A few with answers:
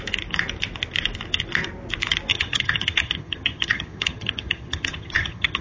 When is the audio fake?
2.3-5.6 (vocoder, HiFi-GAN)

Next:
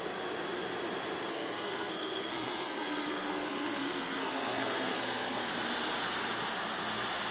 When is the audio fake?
1.3-5.5 (codec, SNAC)

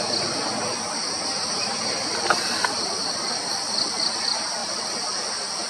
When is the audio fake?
1.0-2.0 (vocoder, BigVGAN v2)

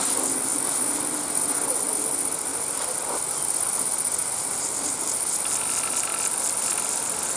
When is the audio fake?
0.5-1.0 (vocoder, BigVGAN v2); 2.5-3.2; 4.2-5.4; 6.1-7.4

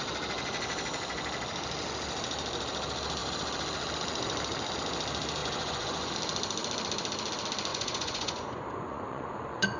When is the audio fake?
5.4-6.1 (vocoder, Vocos); 7.7-9.8

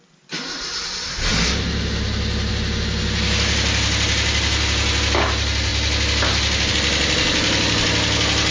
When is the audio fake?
none

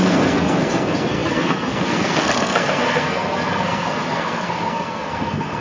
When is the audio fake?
0.0-5.6 (codec, SNAC)